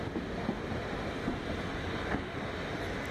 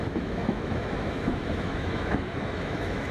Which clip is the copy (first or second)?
second